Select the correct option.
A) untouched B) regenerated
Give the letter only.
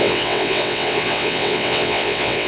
B